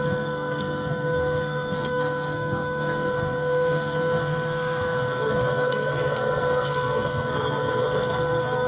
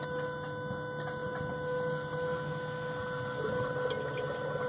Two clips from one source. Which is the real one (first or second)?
second